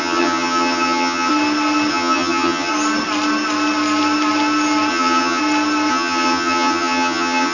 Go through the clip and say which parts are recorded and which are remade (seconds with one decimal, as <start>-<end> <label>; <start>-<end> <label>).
0.0-1.3 remade; 1.3-1.9 recorded; 1.9-2.7 remade; 2.7-4.9 recorded; 4.9-5.4 remade; 5.4-5.9 recorded; 5.9-7.5 remade